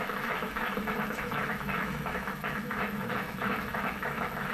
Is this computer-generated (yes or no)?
yes